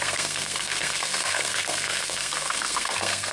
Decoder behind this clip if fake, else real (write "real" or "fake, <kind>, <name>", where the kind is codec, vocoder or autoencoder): fake, codec, SNAC